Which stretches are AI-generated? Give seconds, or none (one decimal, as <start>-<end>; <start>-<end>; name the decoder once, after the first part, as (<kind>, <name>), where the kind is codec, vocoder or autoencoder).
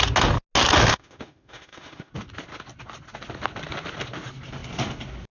0.9-2.1 (autoencoder, DAC-VAE)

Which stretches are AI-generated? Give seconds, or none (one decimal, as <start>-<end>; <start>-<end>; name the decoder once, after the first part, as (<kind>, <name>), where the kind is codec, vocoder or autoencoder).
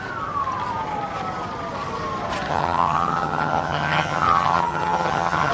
2.5-5.5 (vocoder, HiFi-GAN)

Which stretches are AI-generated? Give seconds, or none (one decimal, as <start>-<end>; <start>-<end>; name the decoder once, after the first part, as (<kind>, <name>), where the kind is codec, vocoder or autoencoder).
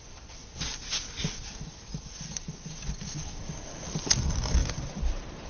0.7-2.8 (vocoder, BigVGAN v2); 4.6-5.5